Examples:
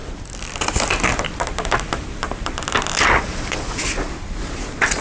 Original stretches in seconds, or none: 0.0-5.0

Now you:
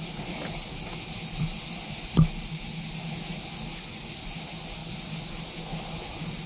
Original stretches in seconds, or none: 0.0-6.5

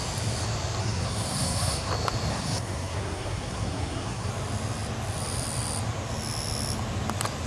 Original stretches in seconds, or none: 0.0-0.8; 1.9-2.3; 4.3-7.5

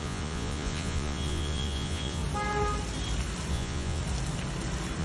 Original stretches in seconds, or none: 2.2-3.5; 4.0-5.0

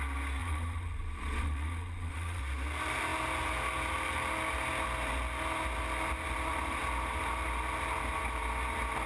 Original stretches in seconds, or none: 0.0-0.4; 2.4-9.1

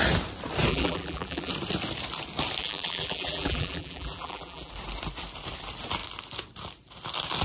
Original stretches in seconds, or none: 0.0-0.7; 1.5-2.6; 4.7-7.4